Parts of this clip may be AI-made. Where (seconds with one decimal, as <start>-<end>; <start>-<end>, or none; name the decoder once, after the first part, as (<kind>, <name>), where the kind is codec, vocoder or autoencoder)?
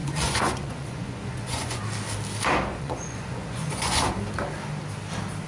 0.0-1.8 (vocoder, Vocos); 2.7-4.0